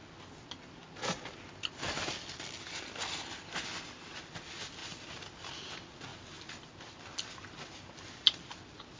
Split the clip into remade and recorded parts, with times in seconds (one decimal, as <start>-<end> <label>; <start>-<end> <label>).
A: 0.0-9.0 recorded